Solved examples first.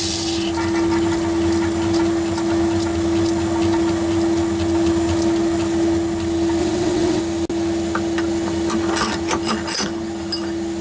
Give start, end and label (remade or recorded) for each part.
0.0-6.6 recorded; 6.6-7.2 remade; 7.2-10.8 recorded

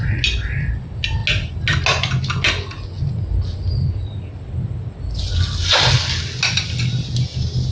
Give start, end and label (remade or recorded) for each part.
0.0-7.7 recorded

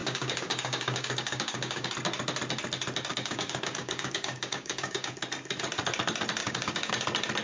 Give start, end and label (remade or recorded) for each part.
0.0-1.9 remade; 1.9-3.1 recorded; 3.1-5.1 remade; 5.1-6.4 recorded; 6.4-6.9 remade; 6.9-7.4 recorded

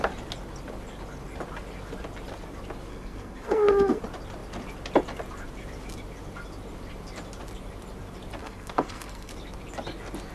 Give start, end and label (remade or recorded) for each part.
0.0-2.9 recorded; 2.9-4.0 remade; 4.0-8.4 recorded; 8.4-9.3 remade; 9.3-10.3 recorded

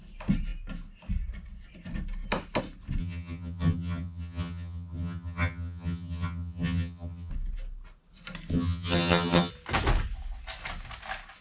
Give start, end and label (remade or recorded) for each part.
0.0-3.0 recorded; 3.0-7.3 remade; 7.3-8.5 recorded; 8.5-9.5 remade; 9.5-11.4 recorded

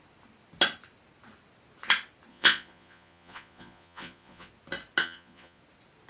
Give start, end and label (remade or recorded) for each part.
0.0-2.3 recorded; 2.3-4.5 remade; 4.5-5.0 recorded; 5.0-5.6 remade; 5.6-6.1 recorded

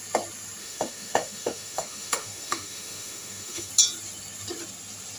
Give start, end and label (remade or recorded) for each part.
0.0-0.6 recorded; 0.6-3.7 remade; 3.7-5.2 recorded

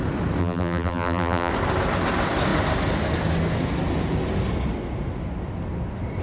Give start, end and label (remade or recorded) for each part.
0.0-0.4 recorded; 0.4-1.5 remade; 1.5-6.2 recorded